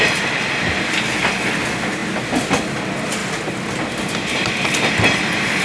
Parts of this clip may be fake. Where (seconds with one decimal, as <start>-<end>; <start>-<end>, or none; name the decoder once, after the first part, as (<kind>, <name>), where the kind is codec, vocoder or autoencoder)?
none